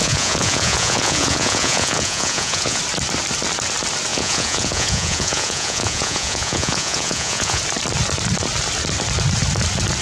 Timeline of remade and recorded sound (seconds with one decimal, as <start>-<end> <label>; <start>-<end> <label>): 0.0-2.8 remade; 2.8-4.1 recorded; 4.1-7.6 remade; 7.6-10.0 recorded